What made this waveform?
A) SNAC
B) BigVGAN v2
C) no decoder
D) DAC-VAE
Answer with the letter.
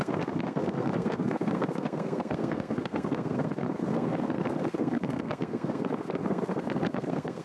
A